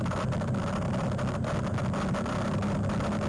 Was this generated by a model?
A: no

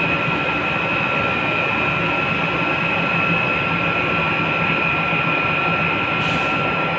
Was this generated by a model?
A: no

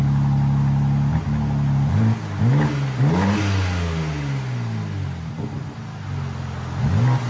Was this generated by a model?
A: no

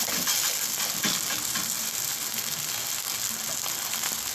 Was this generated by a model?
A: no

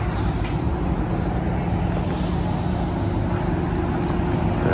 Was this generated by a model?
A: no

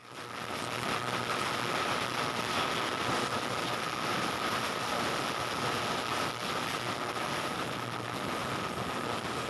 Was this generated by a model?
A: no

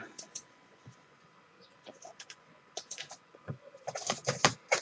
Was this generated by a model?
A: yes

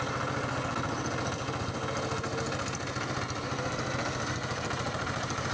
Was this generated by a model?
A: no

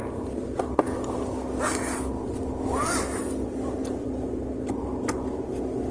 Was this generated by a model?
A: no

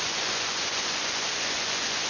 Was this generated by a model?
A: yes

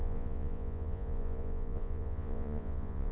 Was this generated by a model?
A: yes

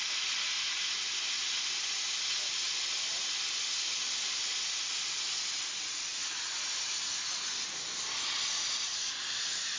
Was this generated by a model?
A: no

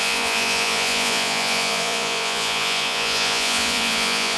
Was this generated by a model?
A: yes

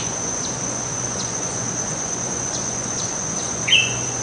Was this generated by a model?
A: yes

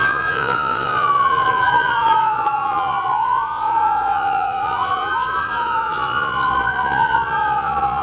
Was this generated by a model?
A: yes